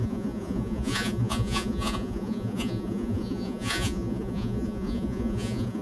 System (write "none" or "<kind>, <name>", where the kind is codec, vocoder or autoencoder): vocoder, Vocos